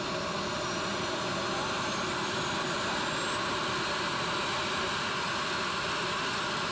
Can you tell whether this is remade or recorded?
recorded